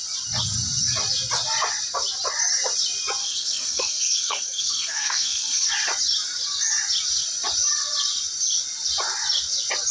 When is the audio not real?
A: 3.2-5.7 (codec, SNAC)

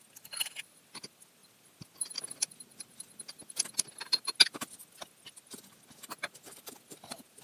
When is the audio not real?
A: none

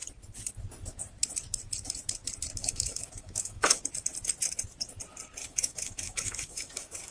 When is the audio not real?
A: 2.6-3.8 (autoencoder, DAC-VAE); 5.4-7.1

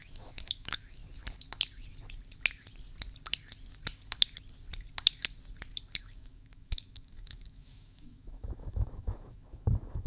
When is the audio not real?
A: 0.0-1.0 (autoencoder, DAC-VAE); 6.0-10.1

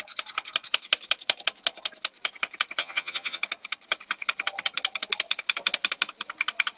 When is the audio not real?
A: 2.8-3.4 (vocoder, HiFi-GAN)

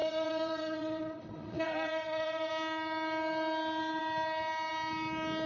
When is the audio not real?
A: 0.0-2.5 (vocoder, WaveNeXt)

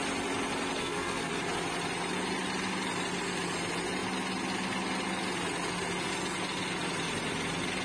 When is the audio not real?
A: 0.8-1.3 (codec, SNAC)

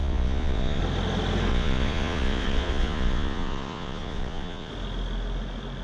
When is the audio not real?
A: 0.0-0.8 (vocoder, Vocos); 1.5-4.7